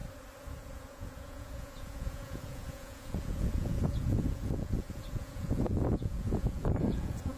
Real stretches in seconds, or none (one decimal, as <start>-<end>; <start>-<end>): 0.0-0.5